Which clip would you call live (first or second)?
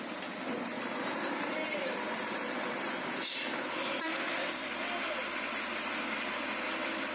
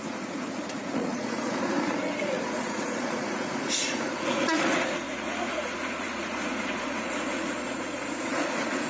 first